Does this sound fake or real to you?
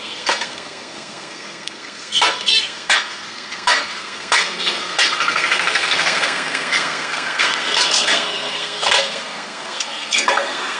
fake